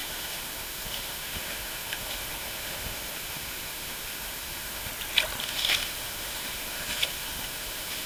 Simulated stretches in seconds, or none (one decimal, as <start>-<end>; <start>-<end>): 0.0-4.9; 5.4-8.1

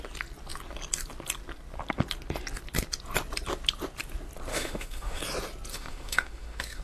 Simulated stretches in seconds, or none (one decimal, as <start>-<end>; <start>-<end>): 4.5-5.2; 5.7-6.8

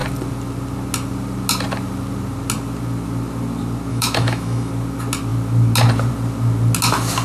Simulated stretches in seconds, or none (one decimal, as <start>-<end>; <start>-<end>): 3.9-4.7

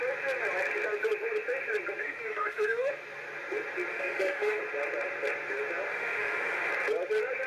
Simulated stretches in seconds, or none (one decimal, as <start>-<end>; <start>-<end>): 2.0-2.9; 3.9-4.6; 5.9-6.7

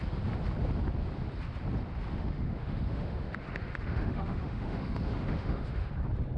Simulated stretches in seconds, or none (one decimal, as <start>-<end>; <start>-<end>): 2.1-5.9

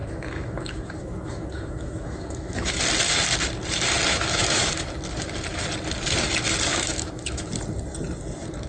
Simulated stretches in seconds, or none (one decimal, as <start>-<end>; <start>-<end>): 0.0-2.8; 4.1-4.7; 6.7-7.5

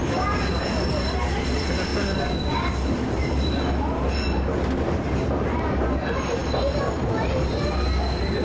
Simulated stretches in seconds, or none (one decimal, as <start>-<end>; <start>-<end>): none

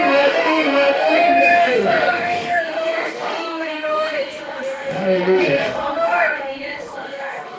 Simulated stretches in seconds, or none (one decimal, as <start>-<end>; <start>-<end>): 0.0-7.6